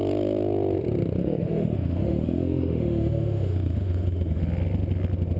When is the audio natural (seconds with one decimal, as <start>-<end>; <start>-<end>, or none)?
0.0-1.2; 4.4-5.4